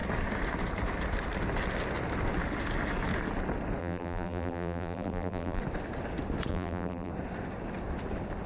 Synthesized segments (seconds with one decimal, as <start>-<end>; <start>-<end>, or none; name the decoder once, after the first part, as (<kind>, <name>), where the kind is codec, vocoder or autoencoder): 3.8-5.6 (vocoder, BigVGAN v2); 6.5-7.1